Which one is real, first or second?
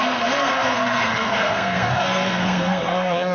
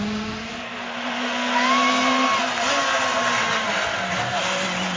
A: second